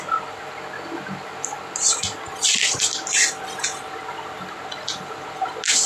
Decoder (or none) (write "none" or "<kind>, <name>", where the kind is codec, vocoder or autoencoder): none